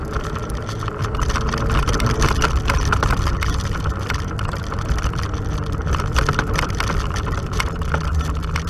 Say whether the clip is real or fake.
fake